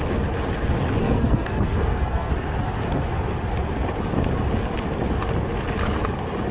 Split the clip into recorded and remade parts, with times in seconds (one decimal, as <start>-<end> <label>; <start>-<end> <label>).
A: 0.0-1.0 recorded; 1.0-2.3 remade; 2.3-6.5 recorded